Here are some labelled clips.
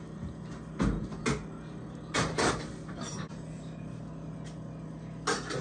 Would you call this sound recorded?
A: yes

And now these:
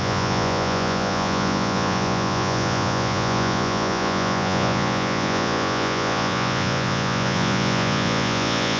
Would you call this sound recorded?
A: no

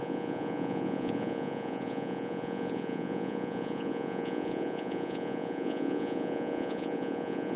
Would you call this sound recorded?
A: no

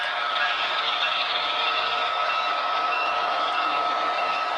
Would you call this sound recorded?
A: no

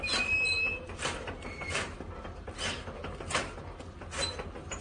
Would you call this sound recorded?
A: yes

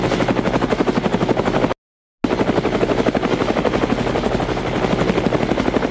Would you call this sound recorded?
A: yes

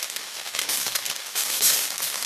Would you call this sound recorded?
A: no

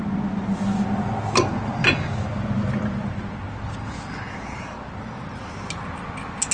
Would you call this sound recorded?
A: yes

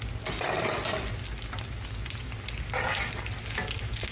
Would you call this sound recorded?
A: yes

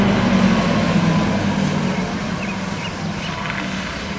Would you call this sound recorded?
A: yes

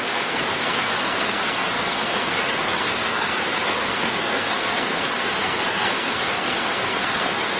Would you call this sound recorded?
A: no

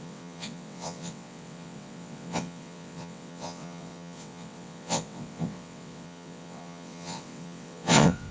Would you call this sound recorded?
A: no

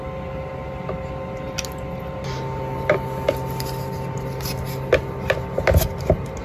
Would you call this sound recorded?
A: yes